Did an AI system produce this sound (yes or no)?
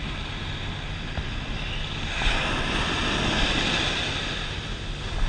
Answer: no